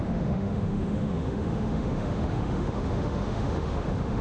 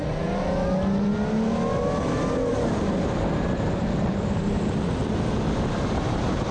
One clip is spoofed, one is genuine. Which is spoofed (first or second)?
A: first